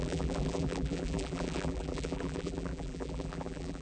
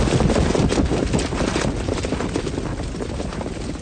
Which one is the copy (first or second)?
first